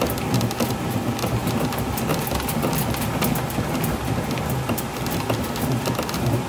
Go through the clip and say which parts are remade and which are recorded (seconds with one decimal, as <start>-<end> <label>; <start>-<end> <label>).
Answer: 0.0-6.5 recorded